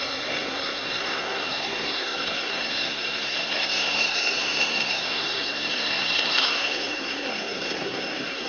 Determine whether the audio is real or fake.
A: fake